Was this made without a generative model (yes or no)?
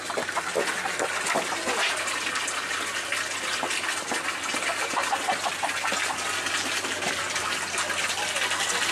yes